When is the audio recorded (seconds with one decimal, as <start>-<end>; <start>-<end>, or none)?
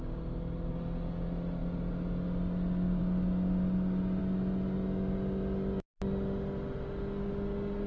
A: 0.0-7.9